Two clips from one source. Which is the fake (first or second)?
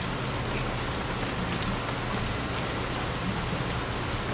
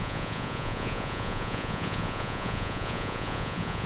second